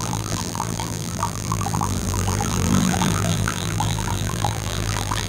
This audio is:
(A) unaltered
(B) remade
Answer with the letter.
B